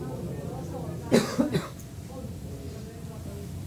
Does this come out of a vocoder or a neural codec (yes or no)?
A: no